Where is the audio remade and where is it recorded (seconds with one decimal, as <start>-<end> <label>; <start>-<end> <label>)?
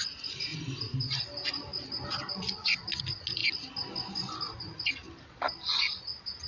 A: 0.0-0.5 recorded; 0.5-1.2 remade; 1.2-6.5 recorded